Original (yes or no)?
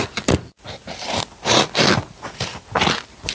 yes